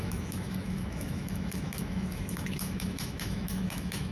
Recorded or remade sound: remade